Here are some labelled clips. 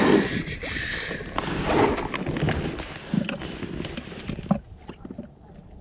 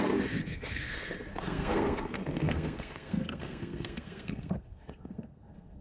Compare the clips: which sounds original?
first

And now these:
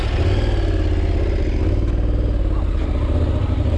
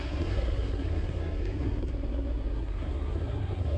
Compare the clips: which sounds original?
first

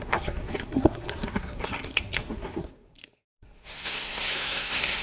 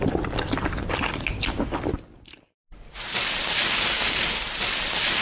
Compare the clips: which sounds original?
second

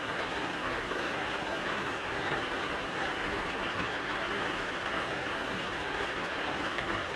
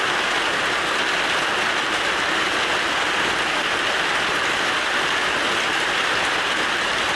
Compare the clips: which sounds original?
second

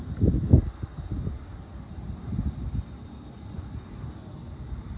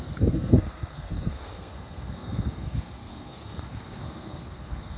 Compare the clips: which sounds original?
first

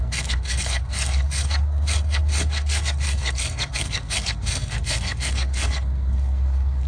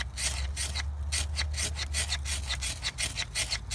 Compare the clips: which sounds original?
second